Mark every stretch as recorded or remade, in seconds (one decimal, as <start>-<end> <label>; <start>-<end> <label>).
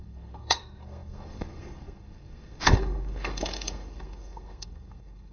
0.0-5.3 remade